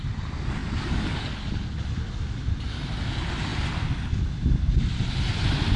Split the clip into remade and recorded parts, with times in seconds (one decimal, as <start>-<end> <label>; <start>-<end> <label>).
0.0-0.6 recorded; 0.6-1.6 remade; 1.6-5.8 recorded